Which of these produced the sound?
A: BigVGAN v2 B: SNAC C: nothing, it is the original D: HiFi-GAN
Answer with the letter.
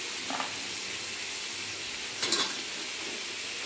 C